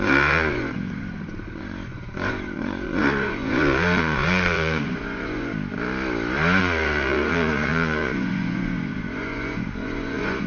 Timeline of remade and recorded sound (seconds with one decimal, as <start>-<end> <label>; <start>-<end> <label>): 0.0-5.5 remade; 5.5-6.6 recorded; 6.6-10.5 remade